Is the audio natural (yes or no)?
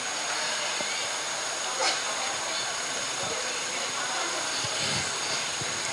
yes